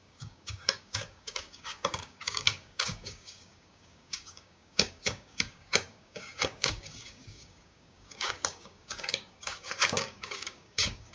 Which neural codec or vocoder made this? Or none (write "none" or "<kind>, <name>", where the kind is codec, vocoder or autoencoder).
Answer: codec, DAC